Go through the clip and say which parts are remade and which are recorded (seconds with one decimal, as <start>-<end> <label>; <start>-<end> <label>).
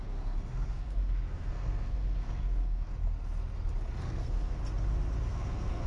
0.0-2.9 remade; 2.9-4.0 recorded; 4.0-4.6 remade; 4.6-5.3 recorded; 5.3-5.9 remade